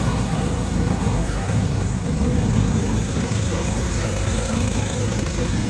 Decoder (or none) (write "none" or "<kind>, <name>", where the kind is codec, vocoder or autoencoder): codec, SNAC